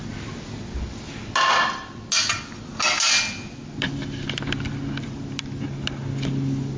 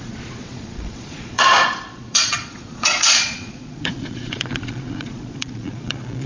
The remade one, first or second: second